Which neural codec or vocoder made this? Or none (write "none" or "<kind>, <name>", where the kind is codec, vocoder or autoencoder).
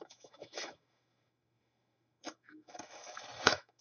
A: autoencoder, DAC-VAE